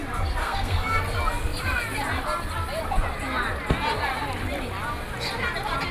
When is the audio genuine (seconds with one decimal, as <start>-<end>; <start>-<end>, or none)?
0.0-0.4; 1.0-5.9